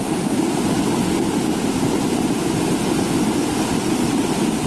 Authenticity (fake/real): real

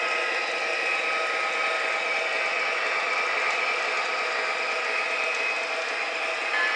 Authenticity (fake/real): real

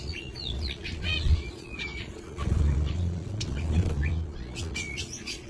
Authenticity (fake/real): fake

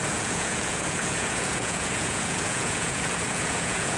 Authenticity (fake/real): fake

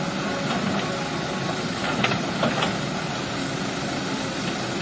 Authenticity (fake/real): real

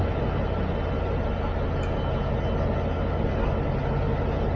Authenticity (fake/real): real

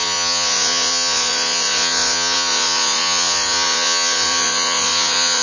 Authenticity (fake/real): fake